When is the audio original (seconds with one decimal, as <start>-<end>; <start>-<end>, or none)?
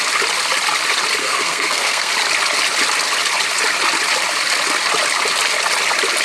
0.0-1.2; 2.1-6.2